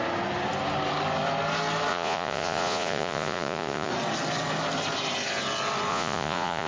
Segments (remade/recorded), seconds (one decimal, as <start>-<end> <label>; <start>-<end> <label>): 0.0-1.9 recorded; 1.9-3.9 remade; 3.9-5.9 recorded; 5.9-6.7 remade

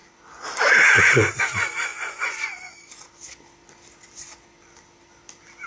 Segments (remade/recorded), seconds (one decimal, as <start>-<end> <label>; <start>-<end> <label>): 0.0-1.9 recorded; 1.9-2.7 remade; 2.7-5.7 recorded